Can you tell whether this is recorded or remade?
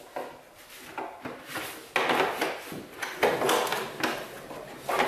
recorded